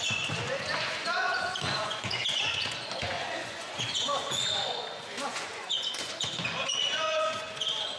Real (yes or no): no